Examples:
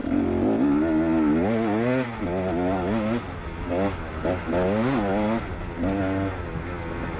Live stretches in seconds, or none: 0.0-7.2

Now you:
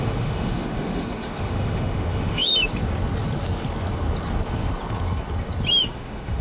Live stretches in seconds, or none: 2.5-5.8

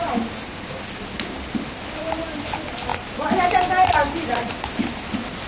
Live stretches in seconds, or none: 0.0-5.5

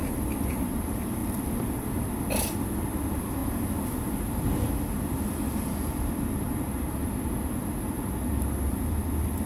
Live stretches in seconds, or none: 3.4-4.8; 7.0-8.7

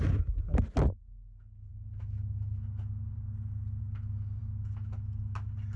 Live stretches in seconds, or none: 0.0-5.8

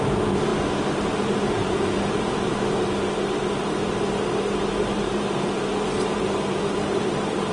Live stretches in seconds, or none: 0.5-1.0; 2.5-4.8